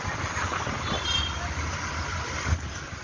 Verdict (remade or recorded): recorded